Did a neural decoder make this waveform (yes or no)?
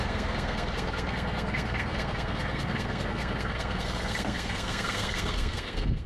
yes